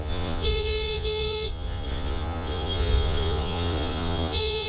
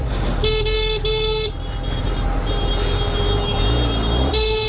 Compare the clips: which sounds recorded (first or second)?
second